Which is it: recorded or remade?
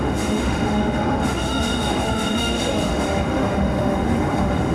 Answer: remade